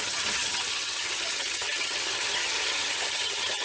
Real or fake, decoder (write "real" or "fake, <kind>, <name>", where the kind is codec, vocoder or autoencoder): fake, vocoder, HiFi-GAN